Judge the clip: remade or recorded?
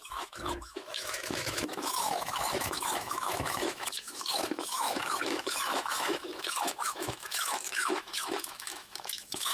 remade